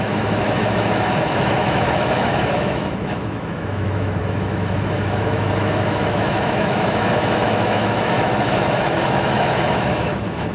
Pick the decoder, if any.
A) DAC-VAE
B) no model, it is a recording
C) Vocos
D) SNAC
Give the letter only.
A